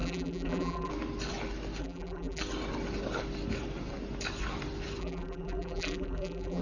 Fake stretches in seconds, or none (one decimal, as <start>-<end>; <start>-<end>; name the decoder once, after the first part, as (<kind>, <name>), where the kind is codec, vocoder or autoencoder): 0.0-0.9 (vocoder, BigVGAN v2); 1.8-2.4; 5.0-6.6